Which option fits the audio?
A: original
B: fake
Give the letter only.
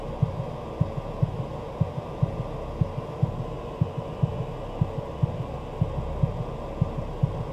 A